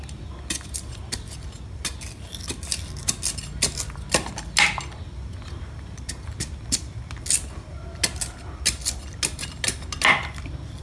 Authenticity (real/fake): real